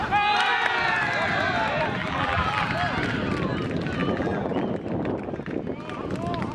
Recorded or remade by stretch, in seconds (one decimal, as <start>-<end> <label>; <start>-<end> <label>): 0.0-2.0 recorded; 2.0-2.7 remade; 2.7-4.0 recorded; 4.0-4.6 remade; 4.6-6.5 recorded